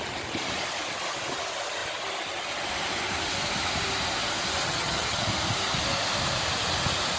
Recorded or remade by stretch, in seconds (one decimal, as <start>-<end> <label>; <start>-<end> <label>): 0.0-4.6 recorded; 4.6-5.2 remade; 5.2-7.2 recorded